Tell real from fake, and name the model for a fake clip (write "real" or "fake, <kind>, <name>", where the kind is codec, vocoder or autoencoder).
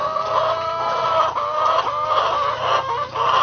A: real